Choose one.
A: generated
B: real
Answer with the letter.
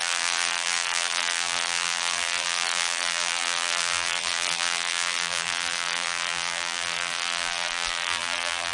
A